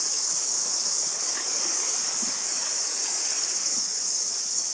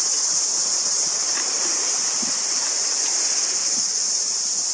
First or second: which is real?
second